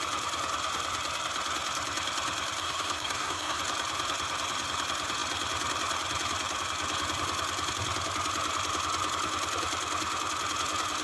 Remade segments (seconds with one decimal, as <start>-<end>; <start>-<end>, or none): 2.6-3.6